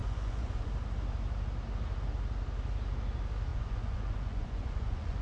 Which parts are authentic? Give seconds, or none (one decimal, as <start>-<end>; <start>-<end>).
0.7-3.5